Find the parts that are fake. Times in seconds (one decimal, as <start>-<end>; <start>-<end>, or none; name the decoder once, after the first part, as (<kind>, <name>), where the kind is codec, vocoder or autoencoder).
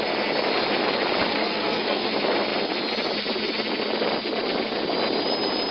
1.3-2.1 (codec, SNAC)